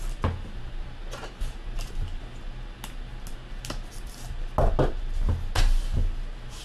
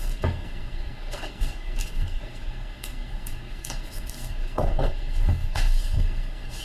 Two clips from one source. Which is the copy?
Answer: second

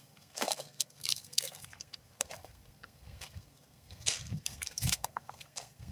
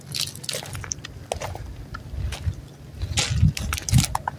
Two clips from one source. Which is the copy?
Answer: first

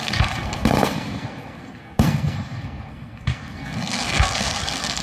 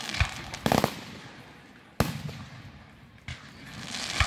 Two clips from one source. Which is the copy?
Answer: first